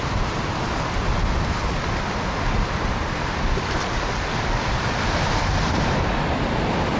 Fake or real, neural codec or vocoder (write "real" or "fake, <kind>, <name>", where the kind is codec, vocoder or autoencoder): real